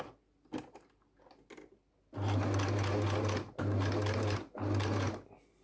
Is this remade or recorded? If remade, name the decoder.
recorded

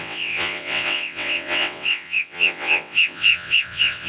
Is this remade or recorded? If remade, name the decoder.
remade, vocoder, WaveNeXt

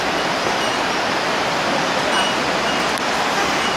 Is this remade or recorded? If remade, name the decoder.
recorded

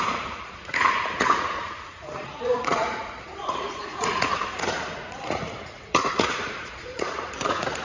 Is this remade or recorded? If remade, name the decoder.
remade, vocoder, Vocos